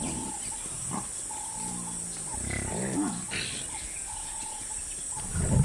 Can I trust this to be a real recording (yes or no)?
yes